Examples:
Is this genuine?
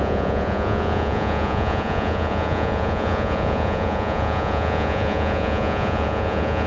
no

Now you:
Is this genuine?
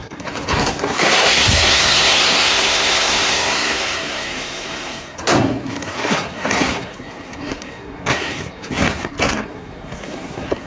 no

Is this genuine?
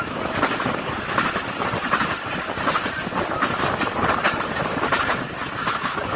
yes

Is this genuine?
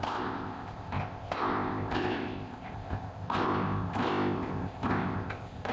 no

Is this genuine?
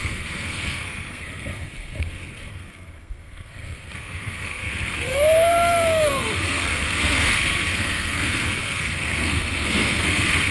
no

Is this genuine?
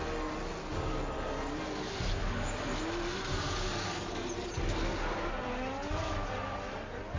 yes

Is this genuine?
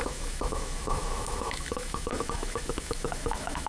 no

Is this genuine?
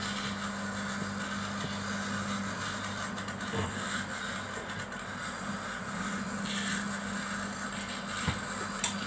yes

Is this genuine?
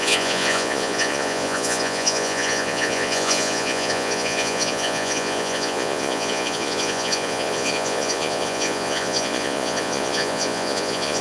no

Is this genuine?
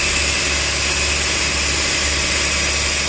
yes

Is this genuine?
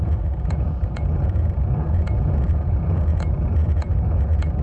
no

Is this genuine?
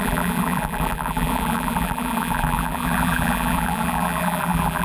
no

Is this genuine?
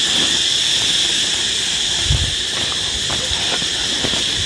yes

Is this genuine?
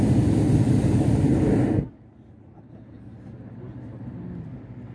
yes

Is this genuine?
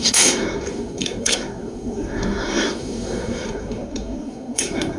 no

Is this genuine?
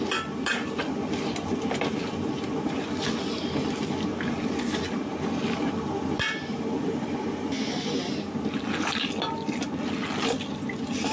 yes